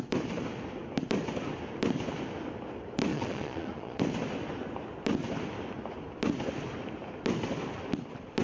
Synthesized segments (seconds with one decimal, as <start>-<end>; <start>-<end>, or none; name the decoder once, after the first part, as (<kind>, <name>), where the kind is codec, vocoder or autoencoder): 3.1-4.0 (vocoder, Vocos)